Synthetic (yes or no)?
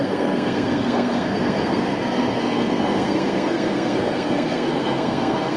yes